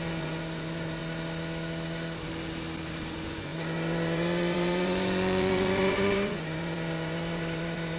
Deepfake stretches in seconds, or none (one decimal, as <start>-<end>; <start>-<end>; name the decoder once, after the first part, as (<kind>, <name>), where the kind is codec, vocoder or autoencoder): 0.0-1.0 (vocoder, Vocos); 3.1-8.0